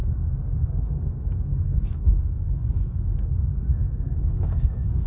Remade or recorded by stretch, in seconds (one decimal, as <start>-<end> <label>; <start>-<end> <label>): 0.0-5.1 remade